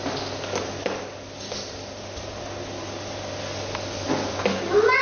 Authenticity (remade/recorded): recorded